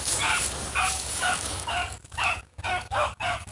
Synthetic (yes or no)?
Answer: yes